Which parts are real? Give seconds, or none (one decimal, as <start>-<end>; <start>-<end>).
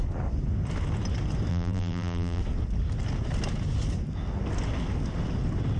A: 0.0-1.5; 2.4-5.8